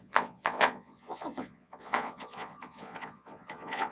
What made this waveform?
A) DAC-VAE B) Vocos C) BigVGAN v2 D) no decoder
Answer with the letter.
B